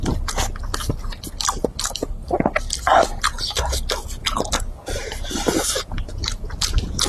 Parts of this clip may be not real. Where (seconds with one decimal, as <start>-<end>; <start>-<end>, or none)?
none